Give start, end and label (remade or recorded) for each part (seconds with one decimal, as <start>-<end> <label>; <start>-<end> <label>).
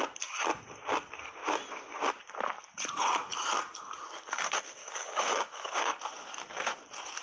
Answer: 0.0-4.8 recorded; 4.8-6.0 remade; 6.0-7.2 recorded